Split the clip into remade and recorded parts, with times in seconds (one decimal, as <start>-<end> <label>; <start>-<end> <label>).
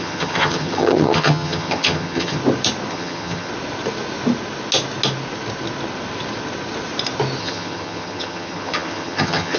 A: 0.0-2.4 remade; 2.4-2.9 recorded; 2.9-3.5 remade; 3.5-7.4 recorded; 7.4-9.6 remade